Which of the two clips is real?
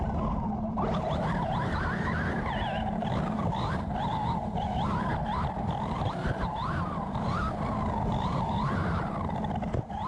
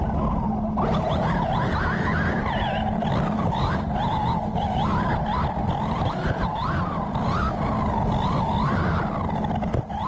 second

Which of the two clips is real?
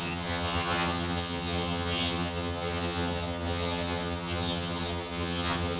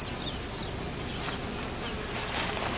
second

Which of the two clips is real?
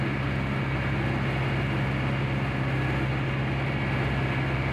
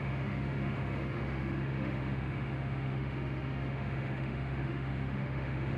first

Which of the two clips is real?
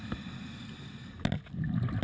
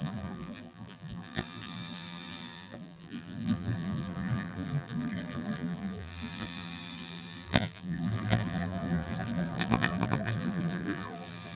first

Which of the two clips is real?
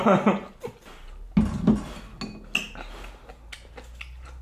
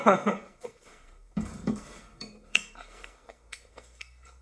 first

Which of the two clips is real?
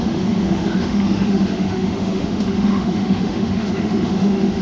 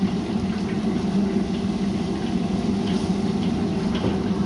second